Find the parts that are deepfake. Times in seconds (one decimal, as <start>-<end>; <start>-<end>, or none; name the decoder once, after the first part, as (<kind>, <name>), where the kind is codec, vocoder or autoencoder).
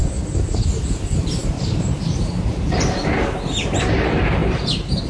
1.4-3.0 (vocoder, BigVGAN v2); 4.4-5.1